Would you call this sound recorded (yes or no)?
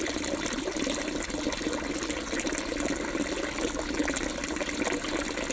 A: yes